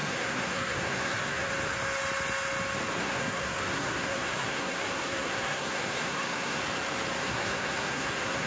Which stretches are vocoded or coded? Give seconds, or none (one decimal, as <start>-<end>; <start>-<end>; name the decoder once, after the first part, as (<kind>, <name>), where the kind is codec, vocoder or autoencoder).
0.0-1.5 (codec, SNAC); 3.0-6.6; 7.2-8.5